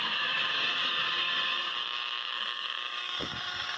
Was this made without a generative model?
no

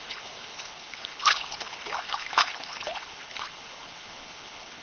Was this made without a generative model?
no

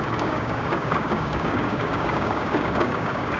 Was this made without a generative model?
no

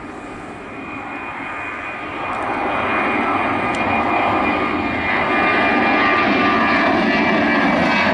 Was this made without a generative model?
yes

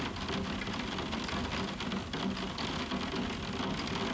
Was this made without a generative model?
yes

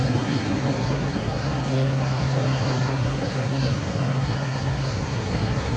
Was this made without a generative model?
no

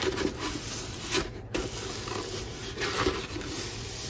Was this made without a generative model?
yes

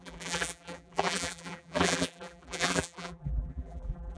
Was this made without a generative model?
no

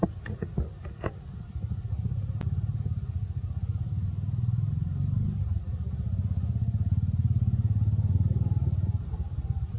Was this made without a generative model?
yes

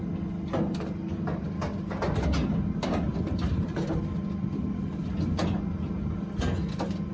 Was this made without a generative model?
yes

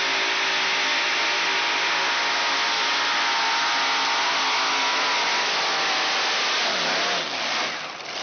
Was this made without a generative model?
yes